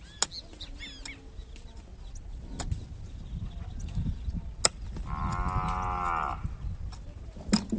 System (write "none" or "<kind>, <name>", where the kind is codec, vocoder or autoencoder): none